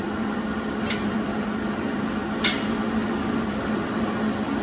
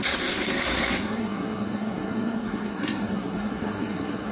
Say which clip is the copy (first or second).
second